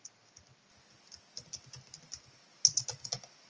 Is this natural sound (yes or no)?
yes